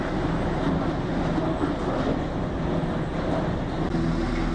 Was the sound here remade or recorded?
recorded